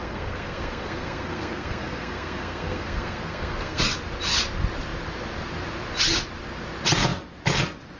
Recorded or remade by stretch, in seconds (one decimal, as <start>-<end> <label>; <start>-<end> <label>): 0.0-3.8 remade; 3.8-8.0 recorded